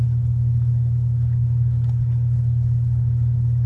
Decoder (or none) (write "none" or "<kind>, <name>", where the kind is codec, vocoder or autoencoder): codec, HILCodec